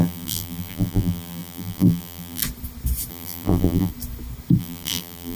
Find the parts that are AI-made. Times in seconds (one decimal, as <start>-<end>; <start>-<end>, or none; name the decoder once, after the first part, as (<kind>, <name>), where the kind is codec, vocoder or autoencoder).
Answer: 0.0-2.4 (vocoder, BigVGAN v2); 3.1-3.9; 4.6-5.4